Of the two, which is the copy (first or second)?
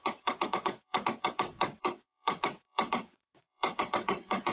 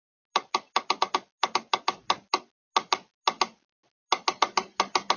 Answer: first